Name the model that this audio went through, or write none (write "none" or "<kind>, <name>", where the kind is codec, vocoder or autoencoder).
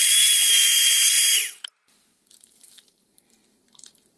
vocoder, BigVGAN v2